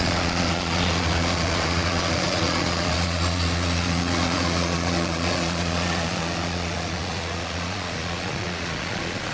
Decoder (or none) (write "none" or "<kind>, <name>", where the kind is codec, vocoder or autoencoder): vocoder, Vocos